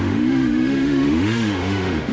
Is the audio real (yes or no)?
no